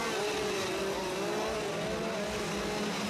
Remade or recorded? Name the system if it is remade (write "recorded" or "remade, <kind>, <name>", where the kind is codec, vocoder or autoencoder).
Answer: recorded